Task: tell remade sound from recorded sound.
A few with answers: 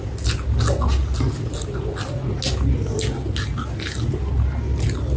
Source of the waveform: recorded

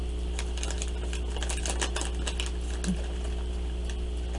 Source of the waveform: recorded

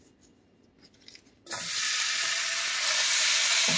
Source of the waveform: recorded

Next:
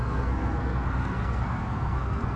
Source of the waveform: remade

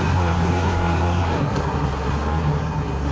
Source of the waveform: remade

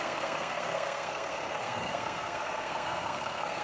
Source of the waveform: remade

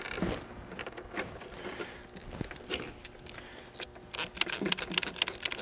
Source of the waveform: recorded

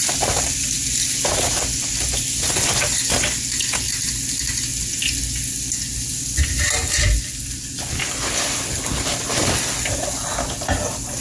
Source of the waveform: recorded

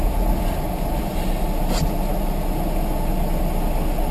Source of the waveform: recorded